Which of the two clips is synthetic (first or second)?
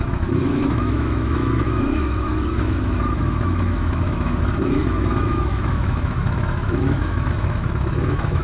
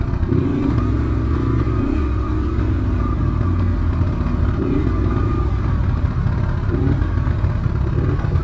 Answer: first